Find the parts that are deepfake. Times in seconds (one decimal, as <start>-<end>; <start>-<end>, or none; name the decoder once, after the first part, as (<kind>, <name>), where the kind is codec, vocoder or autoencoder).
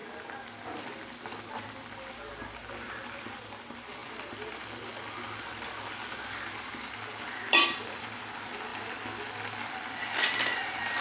0.0-8.7 (vocoder, BigVGAN v2); 10.1-11.0